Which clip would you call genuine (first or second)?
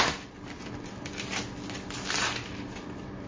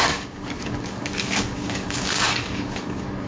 first